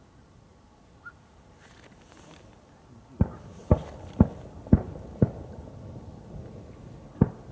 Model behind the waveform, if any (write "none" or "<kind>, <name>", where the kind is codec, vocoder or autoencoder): none